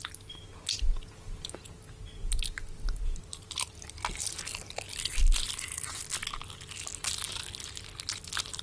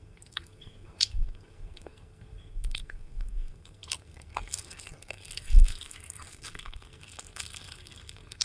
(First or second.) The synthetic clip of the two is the second